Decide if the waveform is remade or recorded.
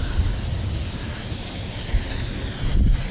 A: recorded